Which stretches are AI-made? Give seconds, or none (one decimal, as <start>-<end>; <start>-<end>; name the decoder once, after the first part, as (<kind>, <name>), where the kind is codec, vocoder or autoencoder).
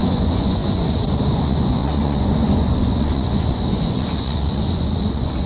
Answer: 0.0-5.5 (vocoder, Vocos)